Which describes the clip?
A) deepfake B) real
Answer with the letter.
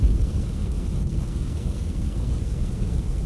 A